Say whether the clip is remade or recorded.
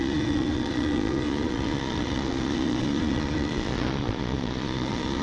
remade